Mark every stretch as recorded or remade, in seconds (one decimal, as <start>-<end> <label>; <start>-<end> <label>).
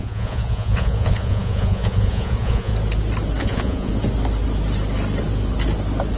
0.0-2.7 remade; 2.7-3.4 recorded; 3.4-3.9 remade; 3.9-6.2 recorded